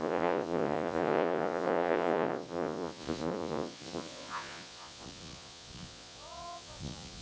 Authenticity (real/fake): fake